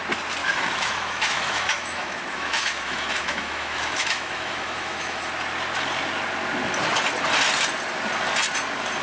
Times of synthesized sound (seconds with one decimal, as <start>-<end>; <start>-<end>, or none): 0.4-5.3